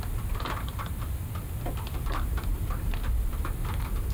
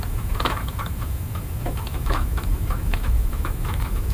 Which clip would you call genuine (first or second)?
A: first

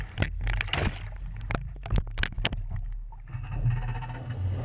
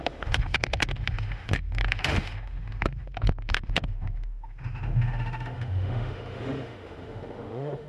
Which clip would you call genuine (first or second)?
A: first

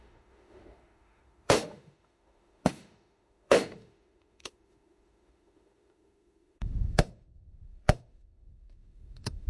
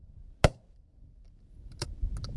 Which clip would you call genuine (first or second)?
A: second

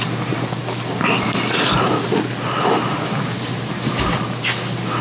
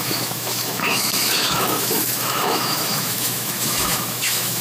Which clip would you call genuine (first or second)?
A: first